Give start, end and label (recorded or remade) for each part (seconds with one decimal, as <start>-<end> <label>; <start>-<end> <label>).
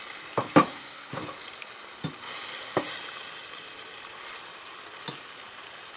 0.0-0.6 recorded; 0.6-1.2 remade; 1.2-6.0 recorded